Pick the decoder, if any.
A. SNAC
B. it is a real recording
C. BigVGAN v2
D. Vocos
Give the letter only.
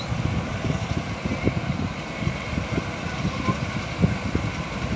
B